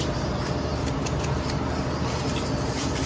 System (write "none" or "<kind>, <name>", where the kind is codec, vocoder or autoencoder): none